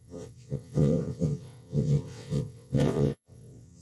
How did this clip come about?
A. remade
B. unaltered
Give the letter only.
A